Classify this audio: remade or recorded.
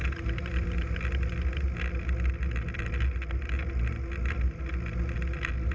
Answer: recorded